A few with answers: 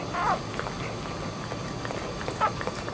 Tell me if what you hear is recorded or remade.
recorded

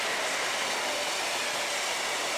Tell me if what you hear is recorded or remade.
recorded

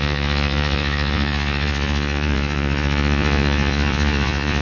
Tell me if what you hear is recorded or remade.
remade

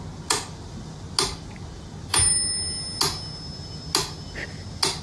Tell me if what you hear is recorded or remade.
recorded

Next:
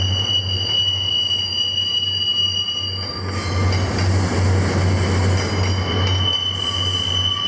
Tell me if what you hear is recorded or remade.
recorded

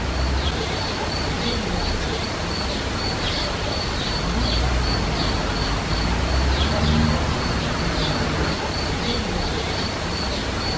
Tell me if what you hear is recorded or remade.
recorded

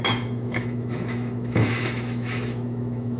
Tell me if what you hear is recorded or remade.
remade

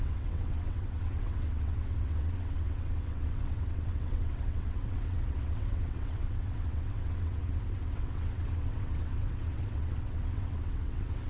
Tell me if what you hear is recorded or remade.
remade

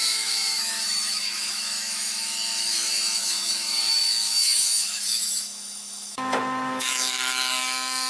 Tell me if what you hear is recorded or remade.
remade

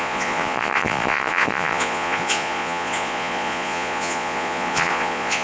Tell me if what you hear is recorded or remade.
remade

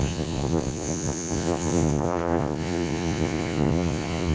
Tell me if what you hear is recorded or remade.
remade